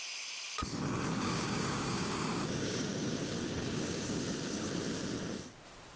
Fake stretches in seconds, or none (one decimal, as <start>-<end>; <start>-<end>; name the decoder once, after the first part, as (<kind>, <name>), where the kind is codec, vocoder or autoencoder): 1.1-4.7 (codec, DAC)